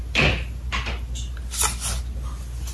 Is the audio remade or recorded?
recorded